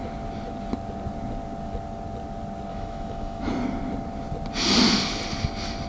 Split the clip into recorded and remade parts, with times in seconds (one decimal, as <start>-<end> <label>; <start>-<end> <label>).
0.0-2.7 recorded; 2.7-3.5 remade; 3.5-5.9 recorded